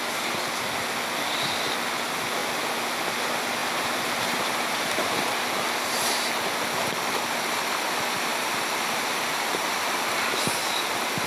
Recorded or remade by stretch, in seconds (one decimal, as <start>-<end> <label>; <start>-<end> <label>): 0.0-3.6 recorded; 3.6-6.3 remade; 6.3-8.3 recorded; 8.3-10.8 remade; 10.8-11.3 recorded